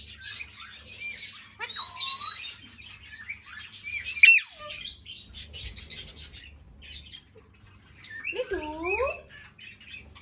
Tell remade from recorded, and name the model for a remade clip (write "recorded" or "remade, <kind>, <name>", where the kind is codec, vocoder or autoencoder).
recorded